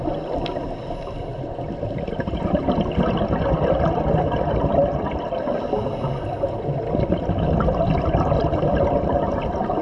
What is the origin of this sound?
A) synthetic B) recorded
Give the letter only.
B